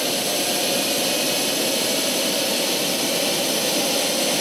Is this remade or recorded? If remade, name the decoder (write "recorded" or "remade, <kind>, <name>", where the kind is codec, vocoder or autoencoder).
recorded